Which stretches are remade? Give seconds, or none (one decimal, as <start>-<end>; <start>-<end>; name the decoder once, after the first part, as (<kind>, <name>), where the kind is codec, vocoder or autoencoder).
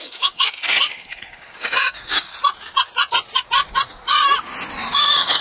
0.0-2.3 (codec, DAC); 4.9-5.4